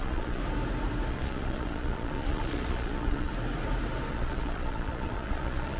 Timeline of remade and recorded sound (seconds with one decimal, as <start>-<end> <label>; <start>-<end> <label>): 0.0-0.4 remade; 0.4-1.1 recorded; 1.1-3.3 remade; 3.3-4.1 recorded; 4.1-5.8 remade